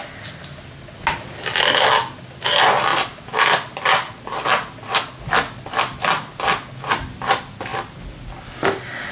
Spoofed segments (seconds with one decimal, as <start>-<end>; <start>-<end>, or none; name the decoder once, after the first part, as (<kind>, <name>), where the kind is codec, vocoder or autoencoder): none